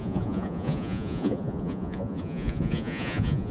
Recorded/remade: remade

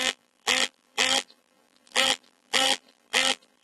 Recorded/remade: remade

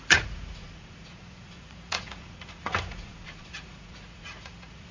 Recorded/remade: remade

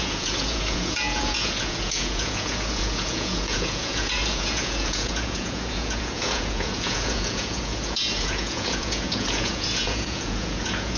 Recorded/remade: remade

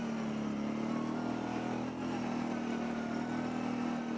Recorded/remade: recorded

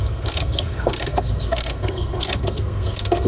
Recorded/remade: remade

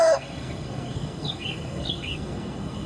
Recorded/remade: remade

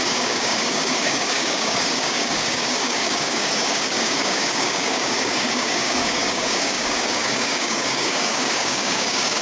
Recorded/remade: remade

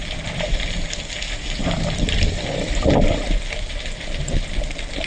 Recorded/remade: recorded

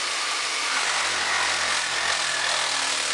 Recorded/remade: recorded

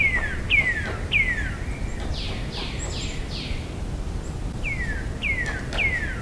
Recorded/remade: recorded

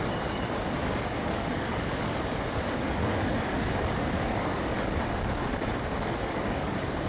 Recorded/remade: remade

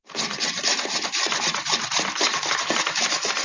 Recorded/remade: recorded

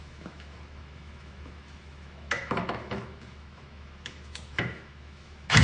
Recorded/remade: remade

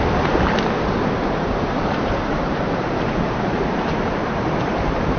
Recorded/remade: remade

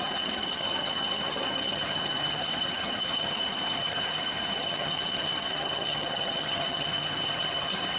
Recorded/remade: remade